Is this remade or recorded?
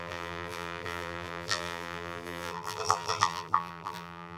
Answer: remade